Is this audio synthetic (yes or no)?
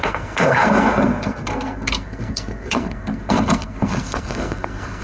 yes